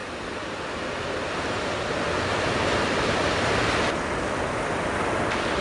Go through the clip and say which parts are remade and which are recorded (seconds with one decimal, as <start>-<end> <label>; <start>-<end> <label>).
0.0-5.6 recorded